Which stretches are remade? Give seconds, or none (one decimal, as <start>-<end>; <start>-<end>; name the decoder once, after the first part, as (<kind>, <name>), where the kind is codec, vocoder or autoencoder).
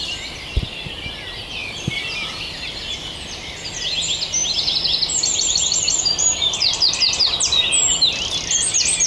1.6-2.4 (vocoder, BigVGAN v2); 4.4-7.2